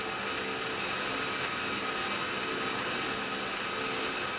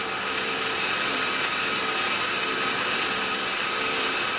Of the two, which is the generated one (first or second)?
second